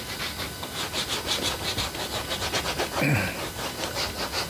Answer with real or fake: real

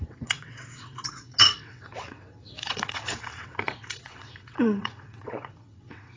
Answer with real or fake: fake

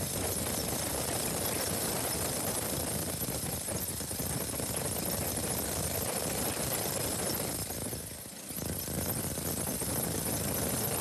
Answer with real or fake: real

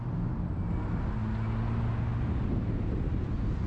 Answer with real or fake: real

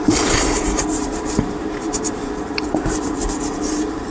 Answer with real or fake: fake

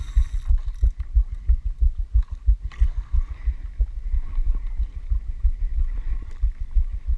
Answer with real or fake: real